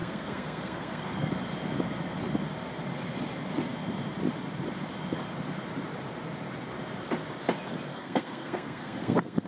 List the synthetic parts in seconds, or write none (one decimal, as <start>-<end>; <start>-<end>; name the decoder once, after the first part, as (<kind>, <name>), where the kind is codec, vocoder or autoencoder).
0.0-1.3 (codec, SNAC); 7.9-9.5